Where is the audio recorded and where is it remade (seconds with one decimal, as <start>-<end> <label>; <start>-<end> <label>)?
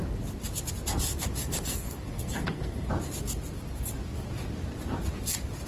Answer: 0.0-1.4 recorded; 1.4-2.9 remade; 2.9-5.7 recorded